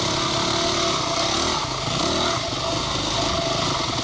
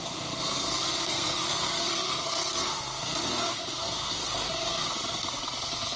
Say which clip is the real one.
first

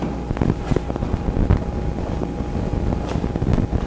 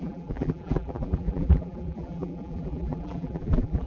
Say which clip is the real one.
first